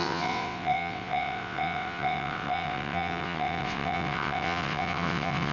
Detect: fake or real fake